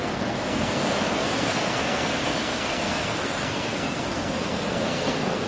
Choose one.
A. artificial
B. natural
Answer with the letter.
A